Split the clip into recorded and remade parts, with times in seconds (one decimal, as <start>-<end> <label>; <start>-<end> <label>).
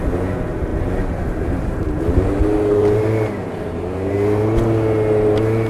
0.0-0.7 recorded; 0.7-4.1 remade; 4.1-5.7 recorded